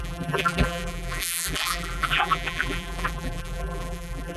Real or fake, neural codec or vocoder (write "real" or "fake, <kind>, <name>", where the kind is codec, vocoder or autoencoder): fake, vocoder, BigVGAN v2